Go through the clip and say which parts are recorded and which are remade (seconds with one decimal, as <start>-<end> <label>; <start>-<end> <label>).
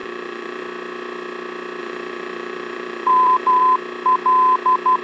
0.0-0.6 remade; 0.6-1.8 recorded; 1.8-3.6 remade; 3.6-5.0 recorded